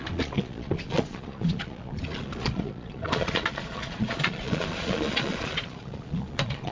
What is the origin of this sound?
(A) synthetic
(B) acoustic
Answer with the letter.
A